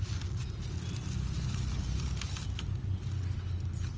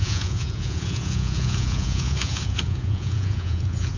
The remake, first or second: second